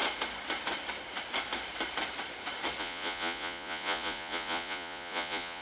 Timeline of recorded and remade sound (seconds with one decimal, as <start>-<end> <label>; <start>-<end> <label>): 0.0-2.8 recorded; 2.8-5.6 remade